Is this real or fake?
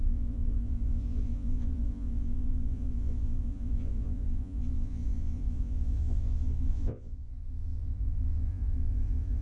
fake